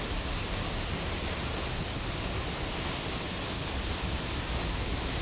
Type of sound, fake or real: real